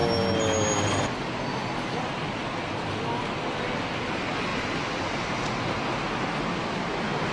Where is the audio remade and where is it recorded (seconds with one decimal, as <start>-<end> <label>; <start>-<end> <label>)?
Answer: 0.0-7.3 recorded